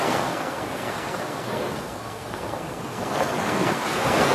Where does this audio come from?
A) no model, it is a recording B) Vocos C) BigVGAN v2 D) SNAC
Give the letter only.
D